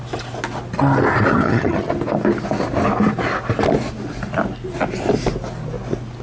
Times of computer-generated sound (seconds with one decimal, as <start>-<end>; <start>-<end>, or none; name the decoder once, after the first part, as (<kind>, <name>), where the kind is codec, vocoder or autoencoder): 1.3-1.9 (vocoder, HiFi-GAN)